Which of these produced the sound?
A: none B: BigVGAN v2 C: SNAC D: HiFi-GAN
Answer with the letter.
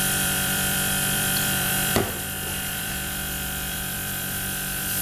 B